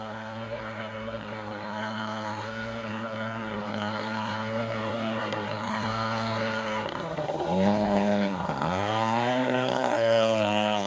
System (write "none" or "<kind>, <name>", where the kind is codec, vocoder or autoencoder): codec, SNAC